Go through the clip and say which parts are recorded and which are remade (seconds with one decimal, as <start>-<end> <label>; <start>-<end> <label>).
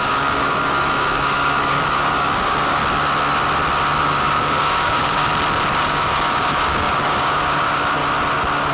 0.0-2.8 remade; 2.8-4.0 recorded; 4.0-5.3 remade; 5.3-5.8 recorded; 5.8-8.0 remade; 8.0-8.7 recorded